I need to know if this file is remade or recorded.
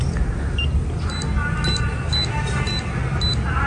recorded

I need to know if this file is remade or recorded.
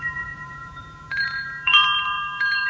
remade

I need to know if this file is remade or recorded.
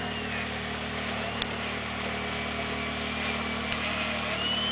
recorded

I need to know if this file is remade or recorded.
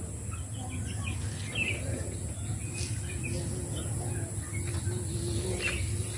recorded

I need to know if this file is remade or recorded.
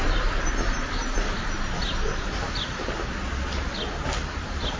recorded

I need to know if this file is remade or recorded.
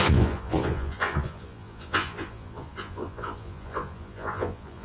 remade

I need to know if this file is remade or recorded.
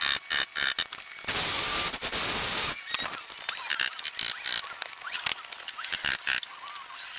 recorded